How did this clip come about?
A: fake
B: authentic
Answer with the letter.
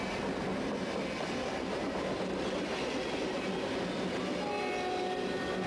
B